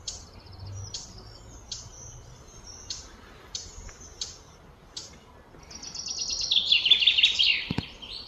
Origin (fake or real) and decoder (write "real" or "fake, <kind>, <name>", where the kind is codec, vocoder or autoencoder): real